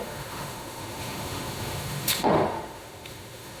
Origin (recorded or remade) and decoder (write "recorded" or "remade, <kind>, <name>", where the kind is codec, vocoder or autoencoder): remade, autoencoder, DAC-VAE